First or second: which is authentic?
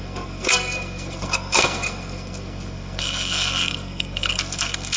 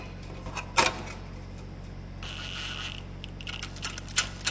second